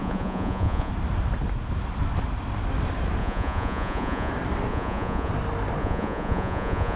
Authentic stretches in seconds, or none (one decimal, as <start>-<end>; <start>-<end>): 0.9-3.2; 4.3-4.7; 5.3-5.8